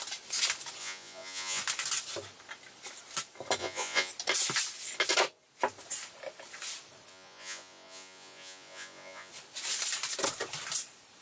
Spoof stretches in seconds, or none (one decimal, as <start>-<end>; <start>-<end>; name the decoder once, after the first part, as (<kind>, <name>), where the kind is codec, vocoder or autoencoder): 0.8-1.6 (vocoder, Vocos); 3.6-4.1; 7.1-9.3